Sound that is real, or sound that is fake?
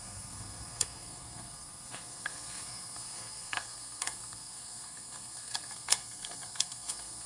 fake